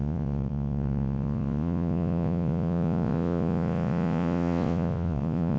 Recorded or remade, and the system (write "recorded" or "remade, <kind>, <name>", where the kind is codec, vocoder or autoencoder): remade, vocoder, Vocos